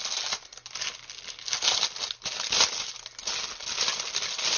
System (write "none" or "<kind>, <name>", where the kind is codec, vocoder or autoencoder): none